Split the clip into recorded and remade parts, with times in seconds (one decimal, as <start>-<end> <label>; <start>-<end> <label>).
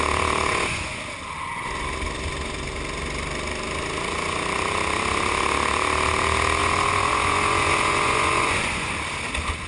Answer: 0.0-0.5 recorded; 0.5-1.0 remade; 1.0-6.6 recorded; 6.6-8.9 remade; 8.9-9.7 recorded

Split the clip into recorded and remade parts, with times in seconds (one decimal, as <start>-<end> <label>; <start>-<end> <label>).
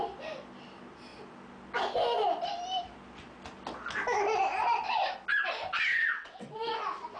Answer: 0.0-5.9 recorded; 5.9-6.6 remade; 6.6-7.2 recorded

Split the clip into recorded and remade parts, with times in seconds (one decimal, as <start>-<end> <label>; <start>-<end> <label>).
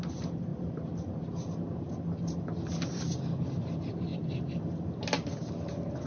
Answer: 0.0-0.5 recorded; 0.5-1.2 remade; 1.2-4.1 recorded; 4.1-5.0 remade; 5.0-6.1 recorded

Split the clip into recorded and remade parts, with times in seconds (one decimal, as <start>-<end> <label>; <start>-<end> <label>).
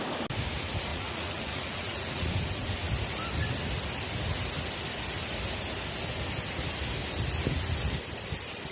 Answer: 0.0-0.9 recorded; 0.9-2.3 remade; 2.3-8.7 recorded